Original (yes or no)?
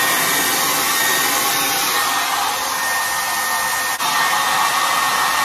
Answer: yes